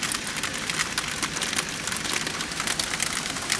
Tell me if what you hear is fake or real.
real